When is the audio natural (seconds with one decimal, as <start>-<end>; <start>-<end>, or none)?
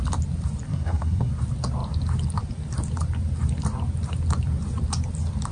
0.0-0.7; 1.3-5.5